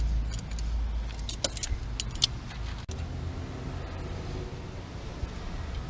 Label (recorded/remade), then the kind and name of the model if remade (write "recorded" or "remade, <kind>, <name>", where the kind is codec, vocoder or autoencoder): recorded